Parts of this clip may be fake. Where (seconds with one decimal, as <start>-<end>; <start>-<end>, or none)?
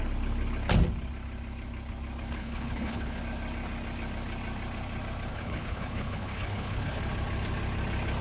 2.4-3.2; 5.3-7.0